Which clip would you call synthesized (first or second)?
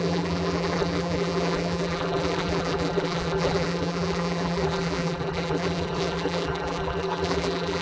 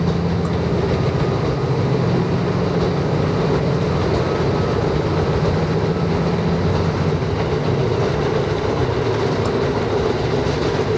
first